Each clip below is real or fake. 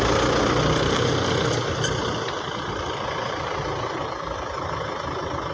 real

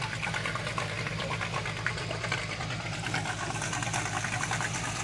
real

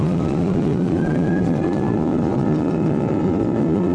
fake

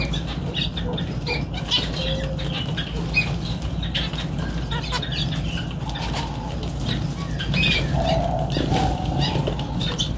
real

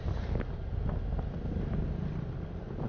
real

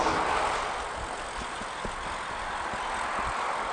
real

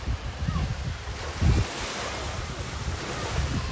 real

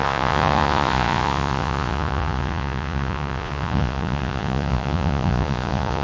fake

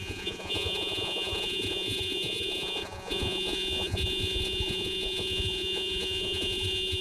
fake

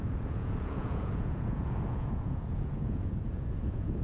fake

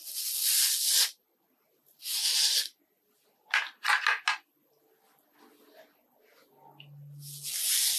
real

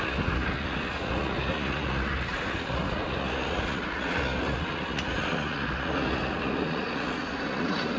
fake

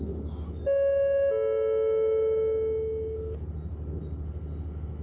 real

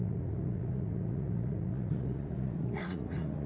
fake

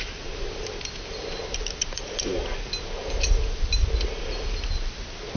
real